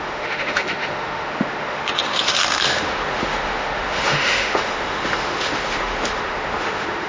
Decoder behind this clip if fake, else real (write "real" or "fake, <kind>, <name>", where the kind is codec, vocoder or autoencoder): fake, autoencoder, DAC-VAE